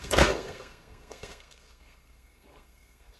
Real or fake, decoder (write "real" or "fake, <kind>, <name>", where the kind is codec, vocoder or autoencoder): fake, codec, SNAC